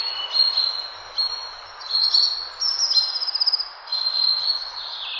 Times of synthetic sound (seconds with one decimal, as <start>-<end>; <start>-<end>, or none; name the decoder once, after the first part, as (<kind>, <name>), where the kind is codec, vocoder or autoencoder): none